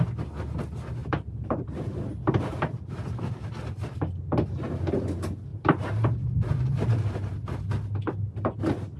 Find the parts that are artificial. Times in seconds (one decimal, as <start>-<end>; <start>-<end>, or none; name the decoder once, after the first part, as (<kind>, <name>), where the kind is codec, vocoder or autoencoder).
1.0-3.3 (vocoder, BigVGAN v2); 5.5-7.1